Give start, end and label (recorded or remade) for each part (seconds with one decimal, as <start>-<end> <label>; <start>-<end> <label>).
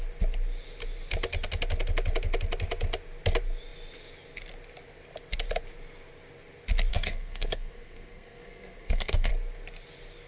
0.0-6.9 recorded; 6.9-9.3 remade; 9.3-10.3 recorded